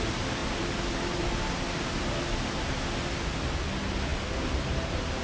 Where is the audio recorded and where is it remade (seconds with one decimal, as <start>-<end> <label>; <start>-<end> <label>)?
0.0-0.4 recorded; 0.4-2.6 remade; 2.6-5.2 recorded